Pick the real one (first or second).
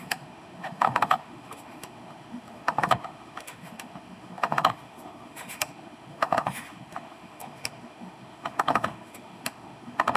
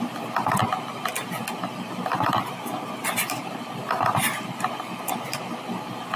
second